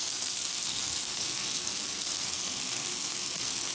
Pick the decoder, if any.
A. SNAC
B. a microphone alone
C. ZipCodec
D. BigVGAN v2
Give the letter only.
A